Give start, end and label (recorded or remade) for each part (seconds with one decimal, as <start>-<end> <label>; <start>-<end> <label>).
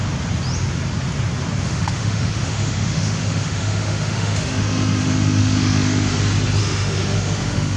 0.0-1.6 recorded; 1.6-6.1 remade; 6.1-6.6 recorded; 6.6-7.8 remade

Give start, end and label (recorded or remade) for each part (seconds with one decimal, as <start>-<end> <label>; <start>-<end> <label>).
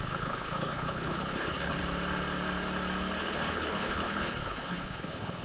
0.0-1.8 remade; 1.8-3.2 recorded; 3.2-5.4 remade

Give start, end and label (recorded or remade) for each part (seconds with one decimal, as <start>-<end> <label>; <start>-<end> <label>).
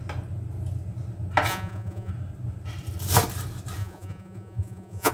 0.0-1.5 recorded; 1.5-2.1 remade; 2.1-3.8 recorded; 3.8-5.1 remade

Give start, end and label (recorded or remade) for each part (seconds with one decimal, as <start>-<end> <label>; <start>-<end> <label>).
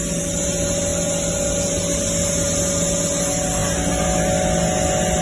0.0-5.2 recorded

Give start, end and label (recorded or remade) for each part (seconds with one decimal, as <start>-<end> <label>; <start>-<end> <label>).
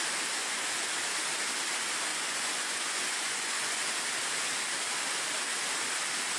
0.0-0.4 recorded; 0.4-0.9 remade; 0.9-2.1 recorded; 2.1-3.9 remade; 3.9-6.4 recorded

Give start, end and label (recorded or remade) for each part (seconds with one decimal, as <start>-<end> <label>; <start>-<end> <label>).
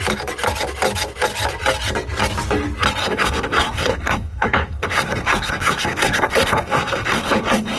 0.0-3.0 recorded; 3.0-7.8 remade